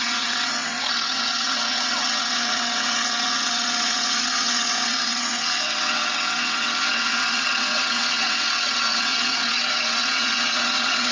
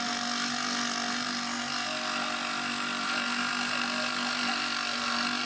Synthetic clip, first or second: first